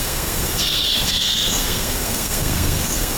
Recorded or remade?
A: remade